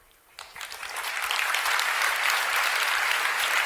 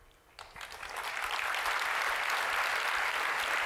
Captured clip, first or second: second